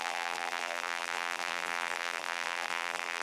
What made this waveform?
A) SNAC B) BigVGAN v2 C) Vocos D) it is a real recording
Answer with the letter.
B